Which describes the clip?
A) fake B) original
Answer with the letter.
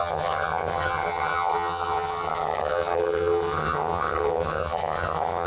A